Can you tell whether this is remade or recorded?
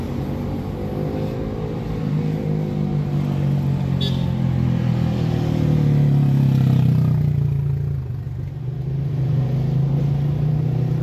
recorded